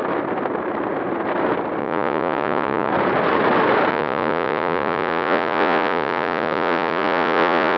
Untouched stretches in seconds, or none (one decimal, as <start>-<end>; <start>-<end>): 0.0-1.8; 2.9-3.9